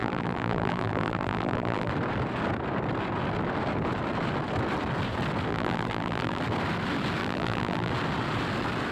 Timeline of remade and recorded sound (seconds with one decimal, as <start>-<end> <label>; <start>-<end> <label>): 0.0-1.9 remade; 1.9-5.5 recorded; 5.5-6.4 remade; 6.4-7.2 recorded; 7.2-7.9 remade; 7.9-8.9 recorded